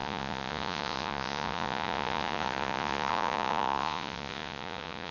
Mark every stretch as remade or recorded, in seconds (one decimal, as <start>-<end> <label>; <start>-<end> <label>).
0.0-5.1 remade